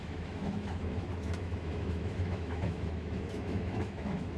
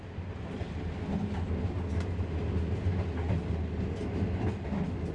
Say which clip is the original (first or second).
second